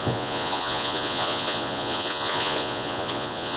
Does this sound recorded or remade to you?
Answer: remade